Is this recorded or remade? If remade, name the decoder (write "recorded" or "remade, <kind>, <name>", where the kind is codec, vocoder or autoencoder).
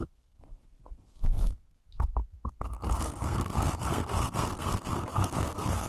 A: remade, codec, SNAC